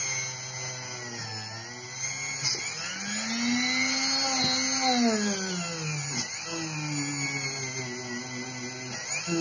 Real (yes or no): yes